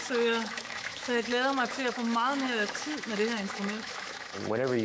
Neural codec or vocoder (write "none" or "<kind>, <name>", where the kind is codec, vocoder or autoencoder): autoencoder, DAC-VAE